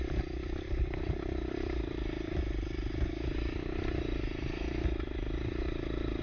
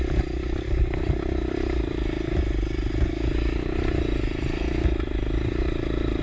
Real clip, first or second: second